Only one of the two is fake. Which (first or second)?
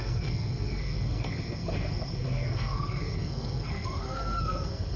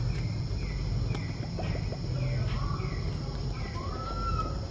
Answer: first